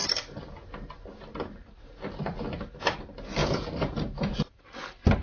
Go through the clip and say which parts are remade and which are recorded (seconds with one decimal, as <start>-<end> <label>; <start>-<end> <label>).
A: 0.0-3.4 recorded; 3.4-4.6 remade; 4.6-5.2 recorded